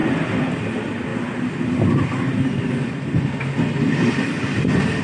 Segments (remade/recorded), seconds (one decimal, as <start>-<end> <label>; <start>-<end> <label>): 0.0-0.6 remade; 0.6-5.0 recorded